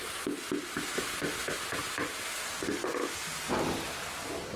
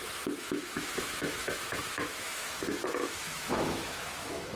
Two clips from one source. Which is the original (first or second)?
first